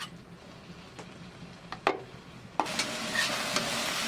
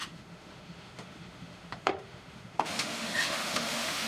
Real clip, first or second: first